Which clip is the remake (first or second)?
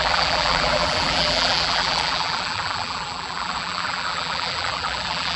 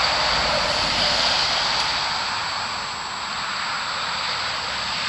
first